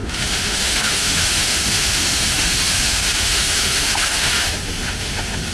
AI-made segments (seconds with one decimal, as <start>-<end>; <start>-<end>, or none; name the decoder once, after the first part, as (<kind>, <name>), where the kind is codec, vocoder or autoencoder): 0.0-5.5 (autoencoder, DAC-VAE)